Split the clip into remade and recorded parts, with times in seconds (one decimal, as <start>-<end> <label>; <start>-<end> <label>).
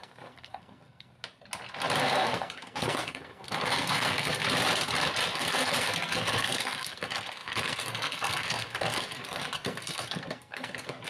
0.0-1.1 remade; 1.1-2.0 recorded; 2.0-4.4 remade; 4.4-5.3 recorded; 5.3-11.1 remade